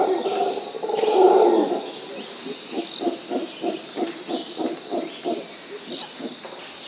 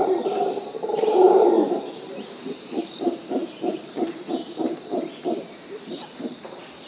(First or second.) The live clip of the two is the first